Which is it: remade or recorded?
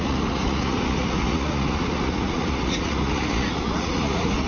remade